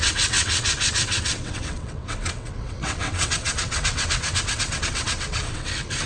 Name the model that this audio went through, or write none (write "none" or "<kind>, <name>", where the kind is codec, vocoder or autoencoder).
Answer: vocoder, WaveNeXt